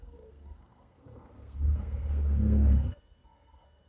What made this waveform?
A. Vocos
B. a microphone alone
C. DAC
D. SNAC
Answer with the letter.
D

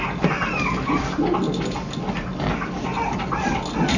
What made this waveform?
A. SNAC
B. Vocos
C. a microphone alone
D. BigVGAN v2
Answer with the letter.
C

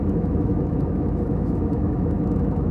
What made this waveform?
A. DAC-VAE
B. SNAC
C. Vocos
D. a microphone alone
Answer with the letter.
A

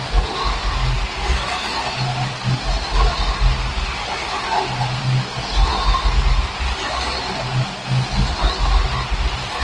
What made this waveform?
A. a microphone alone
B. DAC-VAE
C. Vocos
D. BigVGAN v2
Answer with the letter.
A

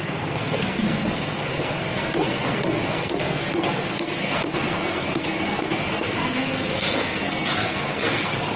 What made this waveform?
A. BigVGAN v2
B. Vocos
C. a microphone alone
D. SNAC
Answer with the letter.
D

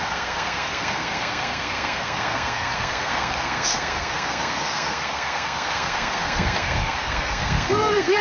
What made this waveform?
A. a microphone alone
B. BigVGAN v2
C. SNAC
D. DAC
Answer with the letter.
C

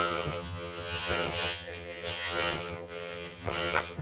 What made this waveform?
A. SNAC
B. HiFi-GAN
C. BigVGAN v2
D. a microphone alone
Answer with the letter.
B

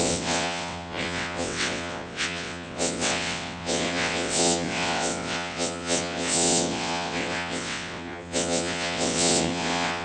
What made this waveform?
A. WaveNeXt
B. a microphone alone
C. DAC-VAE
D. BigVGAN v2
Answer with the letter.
A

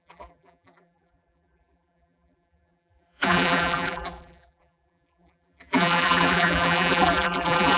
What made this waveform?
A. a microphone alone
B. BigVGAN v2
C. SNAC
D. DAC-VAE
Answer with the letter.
B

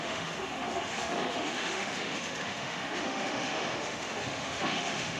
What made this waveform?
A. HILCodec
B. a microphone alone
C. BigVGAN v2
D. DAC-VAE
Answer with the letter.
D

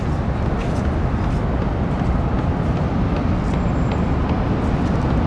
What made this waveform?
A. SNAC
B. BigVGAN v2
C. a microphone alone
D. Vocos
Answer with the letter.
C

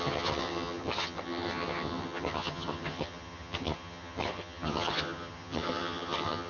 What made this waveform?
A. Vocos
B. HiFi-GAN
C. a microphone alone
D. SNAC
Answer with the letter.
B